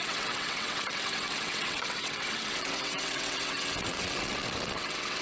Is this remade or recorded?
remade